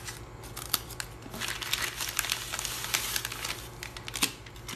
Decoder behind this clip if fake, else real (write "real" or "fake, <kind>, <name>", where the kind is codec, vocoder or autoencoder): real